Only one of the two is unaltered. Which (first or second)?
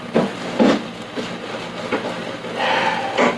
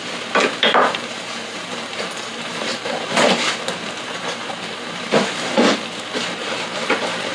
first